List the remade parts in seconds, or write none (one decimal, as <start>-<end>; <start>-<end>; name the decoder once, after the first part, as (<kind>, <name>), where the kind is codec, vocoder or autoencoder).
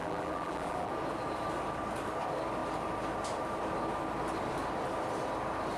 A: 0.0-0.9 (vocoder, BigVGAN v2)